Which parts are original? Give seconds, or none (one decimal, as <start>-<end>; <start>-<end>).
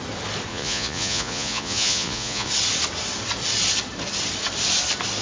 0.0-0.5; 2.5-5.2